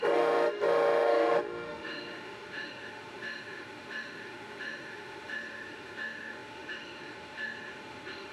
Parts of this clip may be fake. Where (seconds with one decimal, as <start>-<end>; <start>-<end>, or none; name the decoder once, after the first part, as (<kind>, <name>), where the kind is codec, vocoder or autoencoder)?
0.0-8.3 (autoencoder, DAC-VAE)